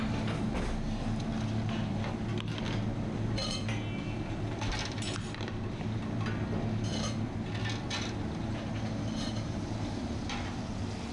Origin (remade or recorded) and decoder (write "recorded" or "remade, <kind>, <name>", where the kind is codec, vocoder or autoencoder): recorded